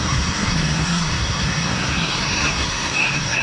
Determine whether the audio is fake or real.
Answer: fake